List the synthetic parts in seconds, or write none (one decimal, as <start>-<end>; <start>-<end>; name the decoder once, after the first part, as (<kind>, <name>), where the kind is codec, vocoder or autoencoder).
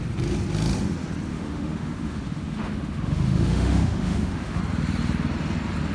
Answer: 1.3-4.6 (autoencoder, DAC-VAE)